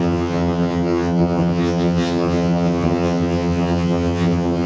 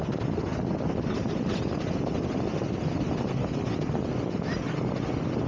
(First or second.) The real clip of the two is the second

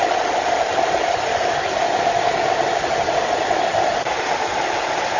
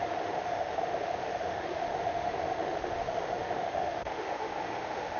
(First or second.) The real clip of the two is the first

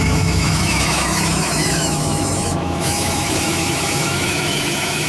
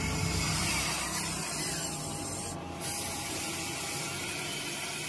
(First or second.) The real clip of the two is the second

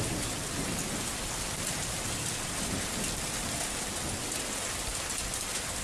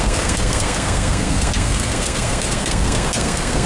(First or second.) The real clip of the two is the first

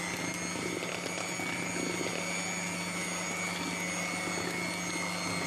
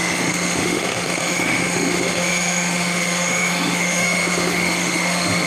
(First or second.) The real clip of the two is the first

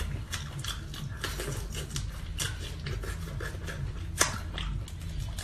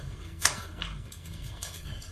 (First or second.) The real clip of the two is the first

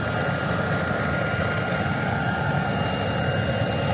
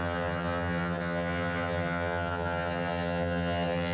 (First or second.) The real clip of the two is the first